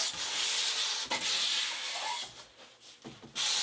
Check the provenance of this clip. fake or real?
real